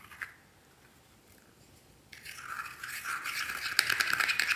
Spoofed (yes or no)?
no